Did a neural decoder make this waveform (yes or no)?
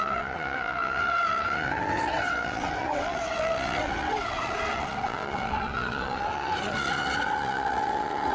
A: yes